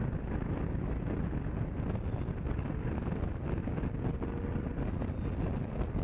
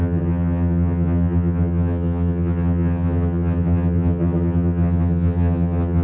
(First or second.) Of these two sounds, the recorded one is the first